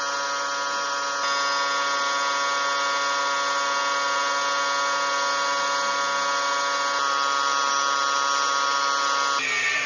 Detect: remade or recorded recorded